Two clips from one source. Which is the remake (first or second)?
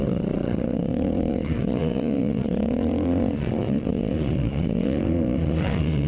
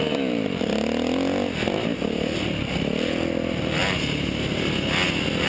first